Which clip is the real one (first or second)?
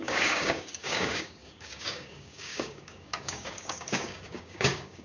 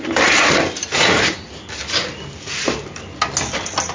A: second